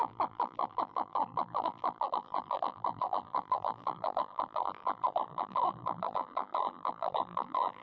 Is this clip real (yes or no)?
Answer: no